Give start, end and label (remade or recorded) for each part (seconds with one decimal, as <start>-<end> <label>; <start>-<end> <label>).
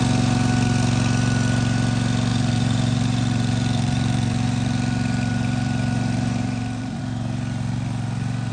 0.0-2.3 recorded; 2.3-7.0 remade; 7.0-8.5 recorded